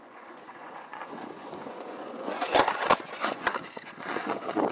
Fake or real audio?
fake